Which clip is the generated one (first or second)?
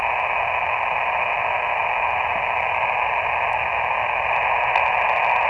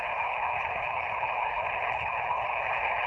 second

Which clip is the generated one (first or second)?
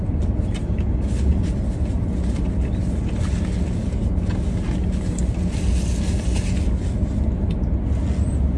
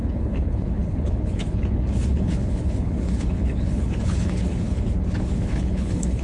second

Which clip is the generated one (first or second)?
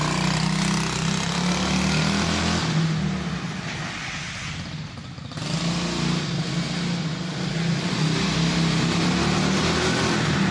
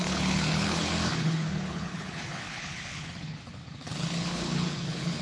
second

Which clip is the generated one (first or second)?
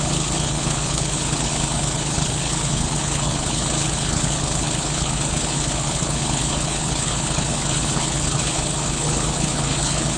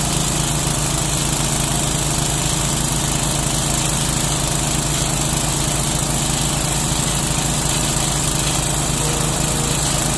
first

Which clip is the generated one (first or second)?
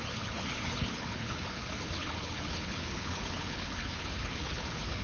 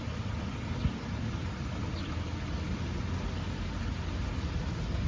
first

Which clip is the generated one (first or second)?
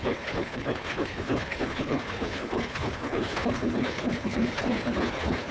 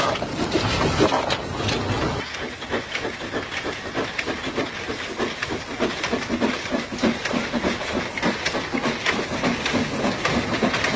first